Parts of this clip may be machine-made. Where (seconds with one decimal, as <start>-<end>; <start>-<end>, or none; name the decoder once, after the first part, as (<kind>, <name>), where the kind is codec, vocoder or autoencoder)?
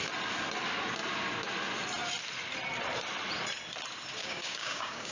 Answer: 4.2-5.1 (codec, DAC)